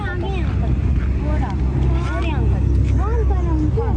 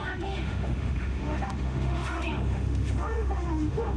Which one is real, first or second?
first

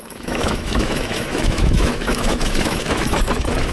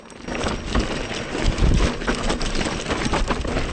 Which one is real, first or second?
second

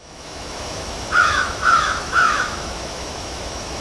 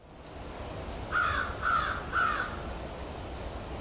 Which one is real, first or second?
second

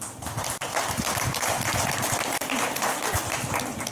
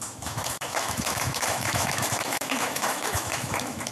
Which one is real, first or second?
first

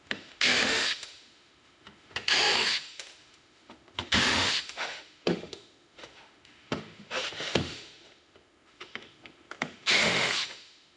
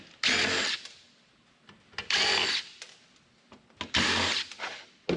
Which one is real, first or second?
second